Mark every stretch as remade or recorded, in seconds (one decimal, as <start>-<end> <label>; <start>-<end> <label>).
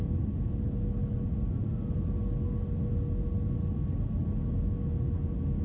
0.0-5.6 recorded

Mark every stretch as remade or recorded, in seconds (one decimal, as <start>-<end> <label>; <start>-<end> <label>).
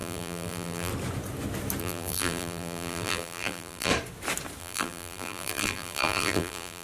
0.0-0.9 remade; 0.9-1.8 recorded; 1.8-3.9 remade; 3.9-4.6 recorded; 4.6-6.8 remade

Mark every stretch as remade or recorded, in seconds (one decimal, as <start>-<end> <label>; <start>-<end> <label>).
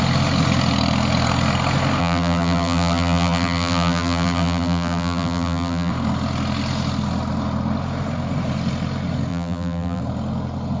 0.0-2.0 recorded; 2.0-5.9 remade; 5.9-9.3 recorded; 9.3-10.0 remade; 10.0-10.8 recorded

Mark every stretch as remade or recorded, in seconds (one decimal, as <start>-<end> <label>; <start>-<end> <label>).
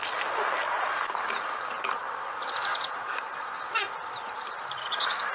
0.0-2.7 recorded; 2.7-5.3 remade